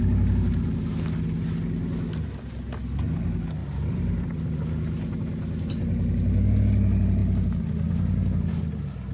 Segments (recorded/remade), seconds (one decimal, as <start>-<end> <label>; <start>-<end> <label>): 0.0-3.6 recorded; 3.6-4.6 remade; 4.6-9.1 recorded